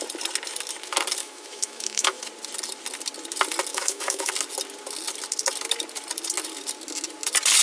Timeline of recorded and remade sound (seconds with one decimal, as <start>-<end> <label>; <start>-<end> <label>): 0.0-1.2 recorded; 1.2-2.2 remade; 2.2-3.7 recorded; 3.7-4.3 remade; 4.3-7.6 recorded